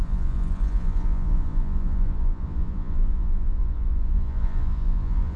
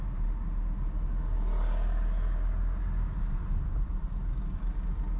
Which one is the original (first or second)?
second